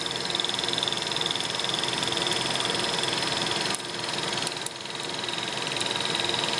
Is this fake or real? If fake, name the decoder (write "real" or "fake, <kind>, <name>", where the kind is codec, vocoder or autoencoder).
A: real